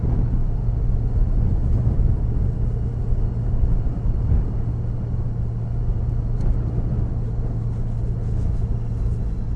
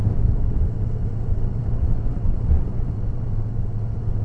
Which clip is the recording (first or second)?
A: first